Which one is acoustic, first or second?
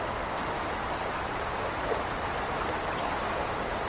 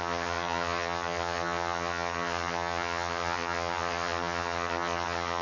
first